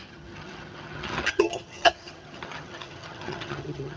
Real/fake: fake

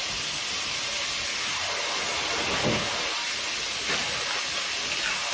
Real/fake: real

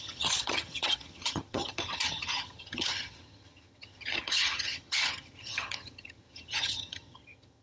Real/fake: fake